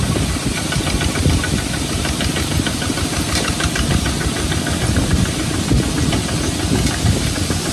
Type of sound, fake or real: real